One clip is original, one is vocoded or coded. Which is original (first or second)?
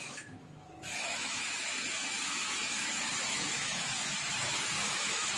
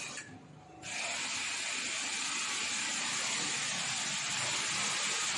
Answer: second